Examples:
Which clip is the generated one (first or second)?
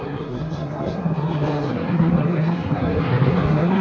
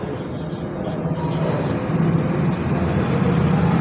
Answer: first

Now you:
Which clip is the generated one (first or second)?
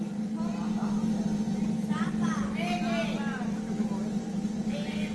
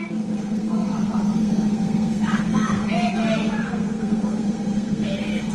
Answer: second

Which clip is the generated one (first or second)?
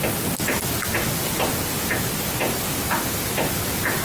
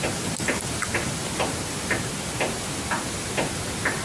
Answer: second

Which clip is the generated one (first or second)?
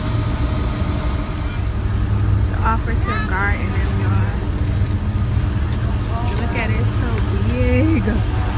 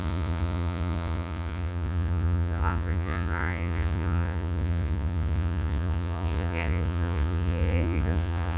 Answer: second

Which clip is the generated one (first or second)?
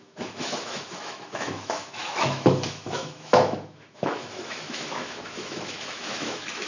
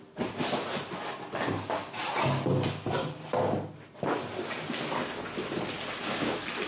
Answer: first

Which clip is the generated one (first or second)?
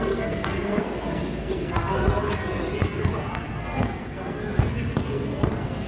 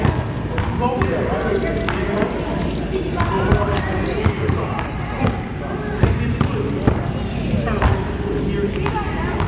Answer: first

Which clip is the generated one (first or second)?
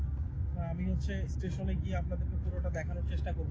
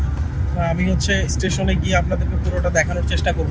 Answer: second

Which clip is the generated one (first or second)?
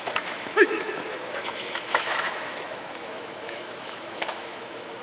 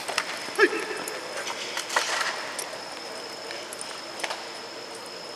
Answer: first